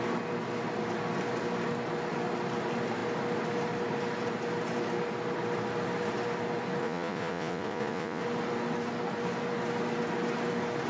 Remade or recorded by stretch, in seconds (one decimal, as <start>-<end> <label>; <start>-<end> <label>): 0.0-6.8 recorded; 6.8-8.2 remade; 8.2-10.9 recorded